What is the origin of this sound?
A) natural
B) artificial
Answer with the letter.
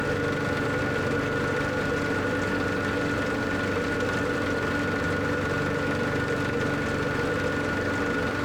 A